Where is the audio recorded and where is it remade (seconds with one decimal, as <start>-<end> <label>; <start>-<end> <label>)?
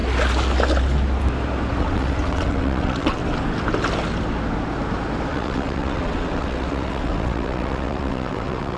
0.0-1.8 recorded; 1.8-3.2 remade; 3.2-5.3 recorded; 5.3-8.8 remade